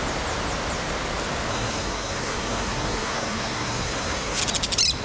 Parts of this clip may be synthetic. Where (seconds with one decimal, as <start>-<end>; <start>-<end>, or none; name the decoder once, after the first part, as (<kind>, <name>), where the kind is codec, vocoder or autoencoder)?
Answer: 1.5-4.4 (codec, SNAC)